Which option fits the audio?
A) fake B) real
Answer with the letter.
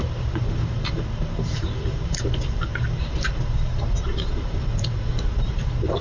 A